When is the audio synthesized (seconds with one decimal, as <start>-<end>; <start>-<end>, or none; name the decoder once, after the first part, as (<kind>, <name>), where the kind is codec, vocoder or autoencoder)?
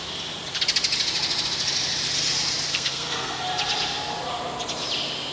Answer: 2.7-3.4 (codec, SNAC)